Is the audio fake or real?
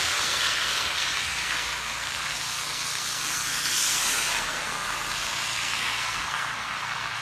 fake